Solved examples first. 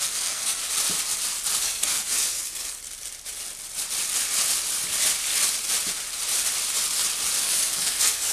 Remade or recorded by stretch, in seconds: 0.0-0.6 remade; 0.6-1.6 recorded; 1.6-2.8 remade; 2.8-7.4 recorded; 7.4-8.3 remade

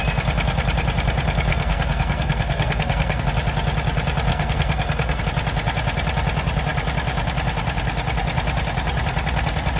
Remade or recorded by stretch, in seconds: 0.0-1.5 recorded; 1.5-3.2 remade; 3.2-4.3 recorded; 4.3-5.2 remade; 5.2-9.8 recorded

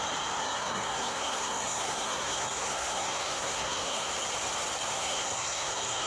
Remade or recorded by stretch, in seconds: 0.0-0.4 recorded; 0.4-4.1 remade; 4.1-4.9 recorded; 4.9-6.1 remade

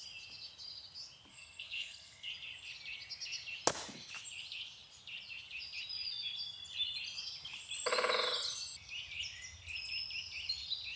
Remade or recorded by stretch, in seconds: 0.0-1.3 recorded; 1.3-2.3 remade; 2.3-11.0 recorded

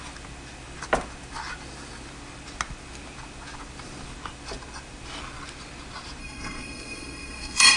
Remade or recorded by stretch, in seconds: 0.0-6.2 recorded; 6.2-7.8 remade